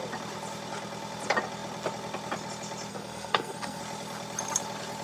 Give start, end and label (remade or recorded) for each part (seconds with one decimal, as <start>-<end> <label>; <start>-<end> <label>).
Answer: 0.0-2.9 recorded; 2.9-3.8 remade; 3.8-5.0 recorded